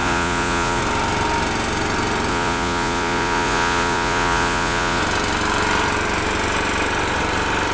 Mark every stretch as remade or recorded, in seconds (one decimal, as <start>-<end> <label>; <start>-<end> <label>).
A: 0.0-0.8 remade; 0.8-2.3 recorded; 2.3-5.0 remade; 5.0-7.7 recorded